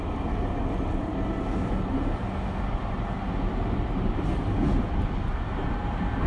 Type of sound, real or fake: real